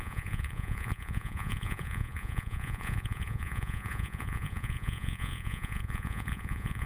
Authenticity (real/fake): fake